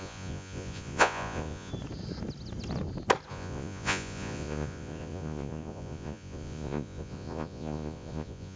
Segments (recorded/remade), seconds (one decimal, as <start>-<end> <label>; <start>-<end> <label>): 0.0-1.7 remade; 1.7-3.3 recorded; 3.3-8.6 remade